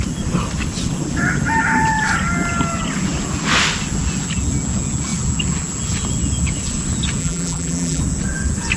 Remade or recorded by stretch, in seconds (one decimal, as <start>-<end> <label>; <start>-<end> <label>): 0.0-7.2 recorded; 7.2-8.0 remade; 8.0-8.8 recorded